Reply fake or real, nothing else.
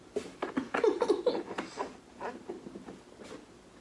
real